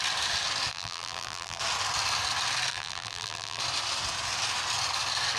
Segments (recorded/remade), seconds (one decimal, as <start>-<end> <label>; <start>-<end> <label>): 0.0-0.7 recorded; 0.7-1.6 remade; 1.6-2.7 recorded; 2.7-3.6 remade; 3.6-5.4 recorded

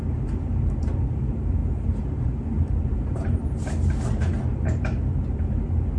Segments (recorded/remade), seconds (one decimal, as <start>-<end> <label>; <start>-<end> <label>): 0.0-6.0 remade

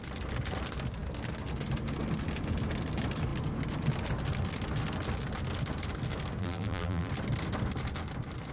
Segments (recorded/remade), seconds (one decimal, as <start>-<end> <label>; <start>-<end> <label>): 0.0-6.4 recorded; 6.4-7.1 remade; 7.1-8.5 recorded

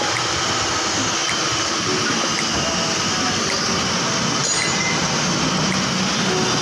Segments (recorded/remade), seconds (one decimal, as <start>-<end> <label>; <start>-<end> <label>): 0.0-6.6 recorded